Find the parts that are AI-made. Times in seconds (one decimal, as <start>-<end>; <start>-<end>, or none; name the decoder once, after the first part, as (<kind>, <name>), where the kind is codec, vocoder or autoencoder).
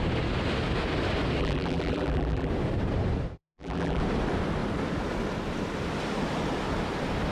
1.4-2.5 (vocoder, BigVGAN v2); 3.4-4.0